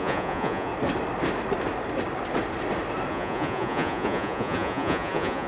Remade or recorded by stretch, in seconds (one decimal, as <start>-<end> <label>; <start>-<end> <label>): 0.0-0.7 remade; 0.7-3.1 recorded; 3.1-5.5 remade

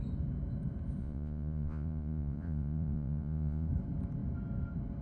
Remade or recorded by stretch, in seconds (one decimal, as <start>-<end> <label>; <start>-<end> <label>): 0.0-1.0 recorded; 1.0-3.7 remade; 3.7-5.0 recorded

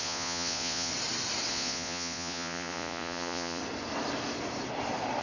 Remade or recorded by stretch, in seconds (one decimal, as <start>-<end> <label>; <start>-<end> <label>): 0.0-0.9 remade; 0.9-1.5 recorded; 1.5-3.6 remade; 3.6-5.2 recorded

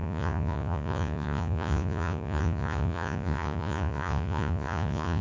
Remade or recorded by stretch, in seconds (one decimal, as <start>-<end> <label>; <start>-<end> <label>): 0.0-5.2 remade